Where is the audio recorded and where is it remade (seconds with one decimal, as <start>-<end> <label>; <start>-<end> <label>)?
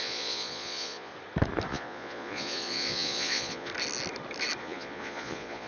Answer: 0.0-1.1 remade; 1.1-1.7 recorded; 1.7-3.7 remade; 3.7-4.6 recorded; 4.6-5.7 remade